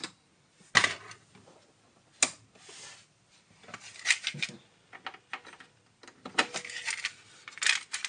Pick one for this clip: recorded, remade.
recorded